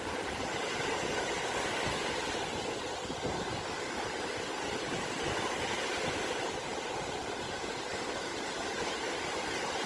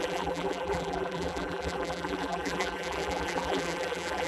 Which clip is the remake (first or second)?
second